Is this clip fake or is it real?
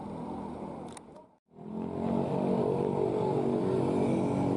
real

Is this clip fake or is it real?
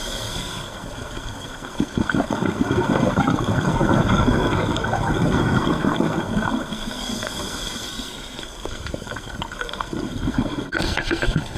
fake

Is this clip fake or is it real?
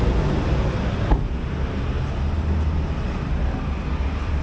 real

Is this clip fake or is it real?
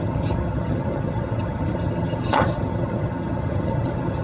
fake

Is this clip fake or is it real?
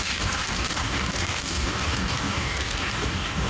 fake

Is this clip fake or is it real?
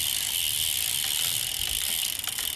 real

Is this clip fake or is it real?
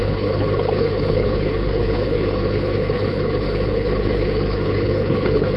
fake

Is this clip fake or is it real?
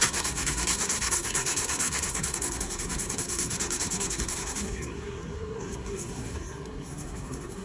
fake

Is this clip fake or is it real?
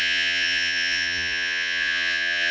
fake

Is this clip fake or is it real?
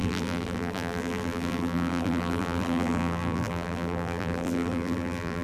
fake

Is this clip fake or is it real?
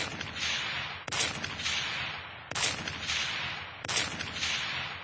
real